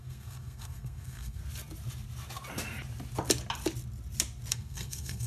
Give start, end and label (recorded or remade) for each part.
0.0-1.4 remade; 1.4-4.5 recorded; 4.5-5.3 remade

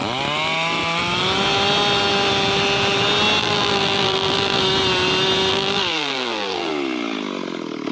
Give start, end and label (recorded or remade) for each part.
0.0-3.4 recorded; 3.4-4.6 remade; 4.6-5.5 recorded; 5.5-6.7 remade; 6.7-7.9 recorded

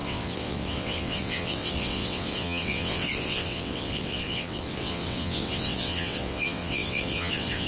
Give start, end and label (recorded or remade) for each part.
0.0-7.7 remade

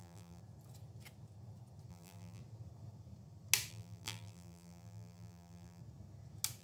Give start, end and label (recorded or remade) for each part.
0.0-0.4 remade; 0.4-1.9 recorded; 1.9-2.4 remade; 2.4-3.7 recorded; 3.7-5.8 remade; 5.8-6.6 recorded

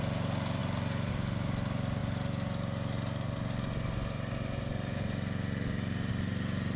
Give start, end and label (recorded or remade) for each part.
0.0-6.8 recorded